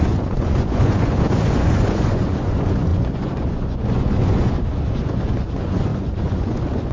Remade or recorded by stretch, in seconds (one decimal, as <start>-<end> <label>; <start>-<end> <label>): 0.0-6.9 remade